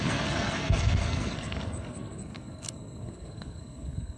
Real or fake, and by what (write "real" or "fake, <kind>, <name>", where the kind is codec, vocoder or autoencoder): fake, codec, SNAC